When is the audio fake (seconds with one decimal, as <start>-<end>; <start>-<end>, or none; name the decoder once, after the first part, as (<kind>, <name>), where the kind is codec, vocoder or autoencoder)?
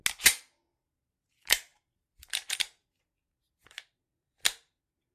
0.8-5.1 (vocoder, BigVGAN v2)